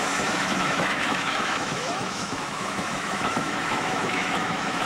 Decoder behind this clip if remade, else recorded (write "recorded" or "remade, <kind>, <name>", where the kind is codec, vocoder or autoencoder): remade, autoencoder, DAC-VAE